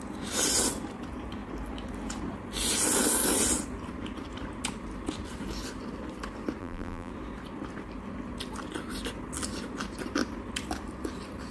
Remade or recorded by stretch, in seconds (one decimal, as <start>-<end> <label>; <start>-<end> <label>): 0.0-6.6 recorded; 6.6-7.1 remade; 7.1-11.5 recorded